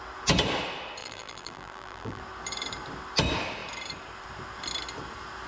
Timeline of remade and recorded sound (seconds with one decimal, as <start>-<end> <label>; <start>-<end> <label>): 0.0-1.0 recorded; 1.0-2.2 remade; 2.2-5.5 recorded